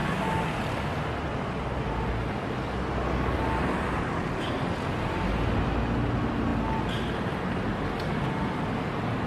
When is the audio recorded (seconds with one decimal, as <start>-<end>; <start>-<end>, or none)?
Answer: 0.0-9.3